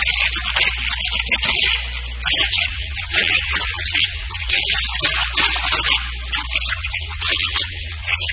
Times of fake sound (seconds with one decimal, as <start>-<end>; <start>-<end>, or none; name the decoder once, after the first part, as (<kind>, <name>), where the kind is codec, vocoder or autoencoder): 2.5-4.6 (vocoder, Vocos); 6.7-8.3